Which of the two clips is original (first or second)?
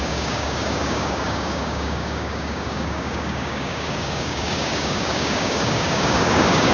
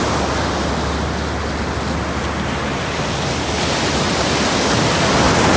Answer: second